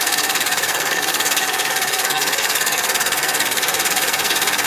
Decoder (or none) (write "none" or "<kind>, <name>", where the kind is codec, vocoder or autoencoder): codec, SNAC